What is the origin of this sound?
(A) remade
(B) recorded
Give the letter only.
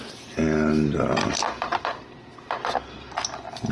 B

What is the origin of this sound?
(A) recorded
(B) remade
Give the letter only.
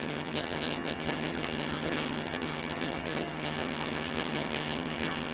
B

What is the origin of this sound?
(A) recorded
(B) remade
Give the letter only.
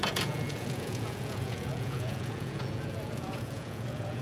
B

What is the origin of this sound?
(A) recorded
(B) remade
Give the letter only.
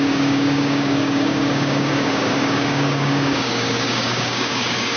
B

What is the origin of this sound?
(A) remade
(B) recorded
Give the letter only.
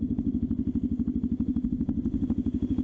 B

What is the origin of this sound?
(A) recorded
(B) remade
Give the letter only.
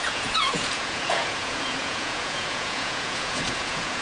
B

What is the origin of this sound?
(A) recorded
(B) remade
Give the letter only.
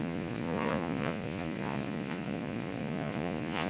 B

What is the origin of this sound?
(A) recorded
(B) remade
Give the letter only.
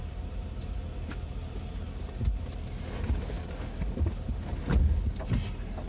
A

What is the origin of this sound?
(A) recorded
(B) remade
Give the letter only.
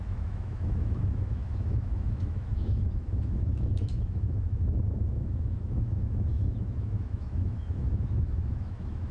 B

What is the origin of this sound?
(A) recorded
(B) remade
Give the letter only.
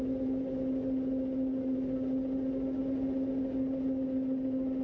A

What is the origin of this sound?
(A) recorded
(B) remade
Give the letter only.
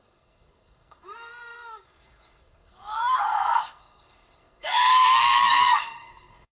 B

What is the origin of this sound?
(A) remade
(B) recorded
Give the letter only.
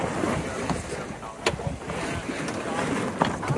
B